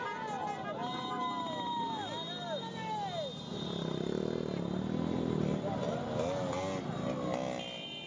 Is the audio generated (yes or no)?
no